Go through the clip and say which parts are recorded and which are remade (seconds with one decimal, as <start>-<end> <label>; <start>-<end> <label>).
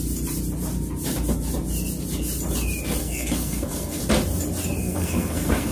0.0-3.0 recorded; 3.0-4.0 remade; 4.0-4.8 recorded; 4.8-5.7 remade